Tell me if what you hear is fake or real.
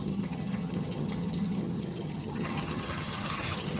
fake